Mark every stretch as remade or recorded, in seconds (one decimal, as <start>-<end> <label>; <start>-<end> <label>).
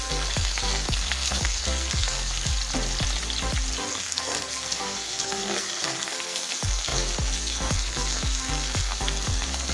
0.0-2.5 remade; 2.5-3.9 recorded; 3.9-9.7 remade